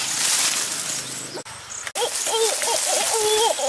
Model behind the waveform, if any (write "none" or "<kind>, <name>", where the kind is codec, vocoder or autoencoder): none